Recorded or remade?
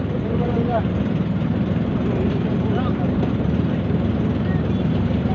remade